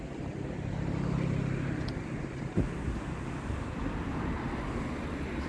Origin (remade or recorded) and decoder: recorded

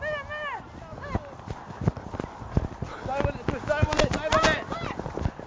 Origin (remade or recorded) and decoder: recorded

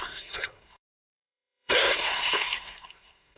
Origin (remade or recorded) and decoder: remade, codec, SNAC